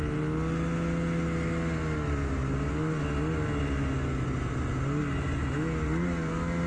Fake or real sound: real